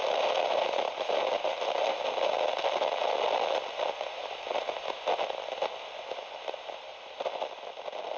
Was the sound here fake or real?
real